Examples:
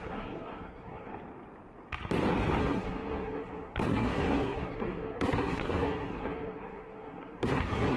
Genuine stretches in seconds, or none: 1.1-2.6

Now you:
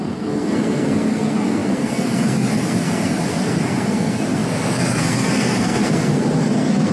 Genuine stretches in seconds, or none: none

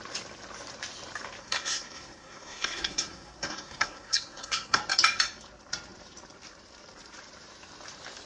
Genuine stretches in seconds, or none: 0.0-1.4; 4.8-8.3

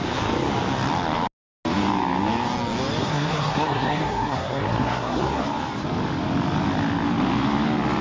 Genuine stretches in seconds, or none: 0.0-3.0; 5.4-8.0

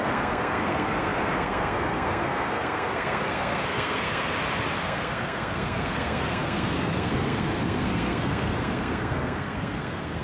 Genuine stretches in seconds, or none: 4.3-4.8

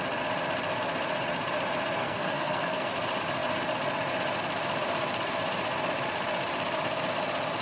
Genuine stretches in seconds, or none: 0.0-2.0; 2.9-7.6